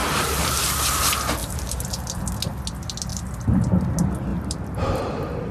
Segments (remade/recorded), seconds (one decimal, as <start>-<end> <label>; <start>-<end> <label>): 0.0-1.0 remade; 1.0-1.4 recorded; 1.4-2.2 remade; 2.2-3.1 recorded; 3.1-3.6 remade; 3.6-4.3 recorded; 4.3-5.5 remade